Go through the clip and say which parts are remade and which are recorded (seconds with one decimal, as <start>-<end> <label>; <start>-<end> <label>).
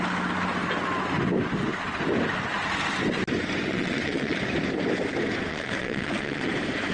0.0-3.7 recorded; 3.7-4.4 remade; 4.4-5.5 recorded; 5.5-6.5 remade; 6.5-6.9 recorded